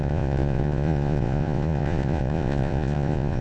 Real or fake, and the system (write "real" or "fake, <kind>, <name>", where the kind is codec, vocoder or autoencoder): fake, vocoder, Vocos